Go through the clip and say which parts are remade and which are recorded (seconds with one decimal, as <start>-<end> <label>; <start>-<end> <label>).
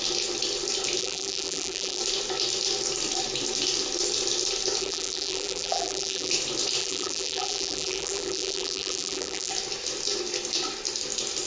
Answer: 0.0-1.0 recorded; 1.0-2.0 remade; 2.0-4.8 recorded; 4.8-6.3 remade; 6.3-6.8 recorded; 6.8-9.5 remade; 9.5-11.5 recorded